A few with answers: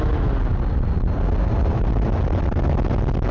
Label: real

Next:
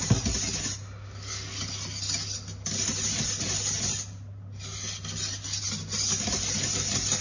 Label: real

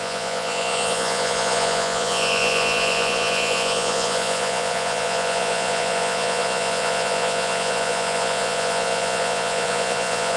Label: fake